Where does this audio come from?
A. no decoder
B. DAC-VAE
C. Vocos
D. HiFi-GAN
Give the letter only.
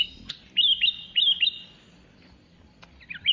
A